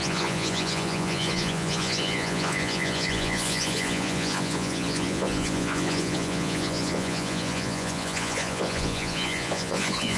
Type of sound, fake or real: fake